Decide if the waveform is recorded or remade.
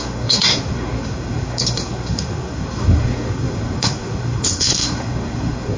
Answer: remade